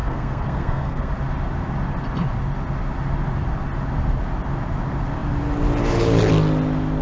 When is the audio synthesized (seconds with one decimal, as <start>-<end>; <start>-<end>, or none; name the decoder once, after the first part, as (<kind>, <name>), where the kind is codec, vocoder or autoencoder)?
0.0-1.1 (codec, SNAC)